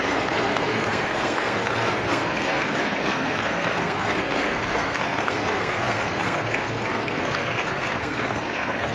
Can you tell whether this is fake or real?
fake